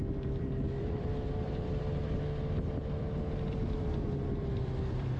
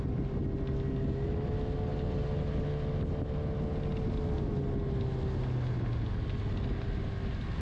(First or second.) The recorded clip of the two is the second